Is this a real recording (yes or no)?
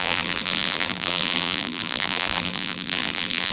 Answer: no